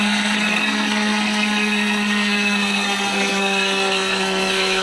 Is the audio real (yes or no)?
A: no